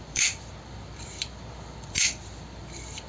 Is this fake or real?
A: fake